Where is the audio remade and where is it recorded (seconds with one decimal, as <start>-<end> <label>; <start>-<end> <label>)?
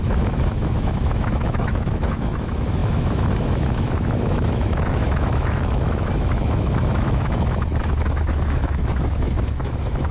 0.0-10.1 remade